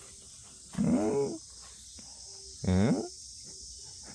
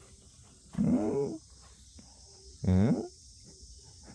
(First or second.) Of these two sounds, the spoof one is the second